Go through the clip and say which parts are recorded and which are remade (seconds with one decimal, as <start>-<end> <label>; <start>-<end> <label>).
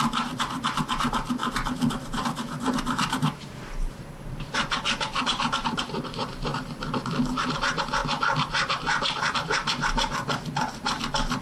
0.0-1.4 remade; 1.4-1.9 recorded; 1.9-6.5 remade; 6.5-7.5 recorded; 7.5-8.0 remade; 8.0-8.5 recorded; 8.5-11.4 remade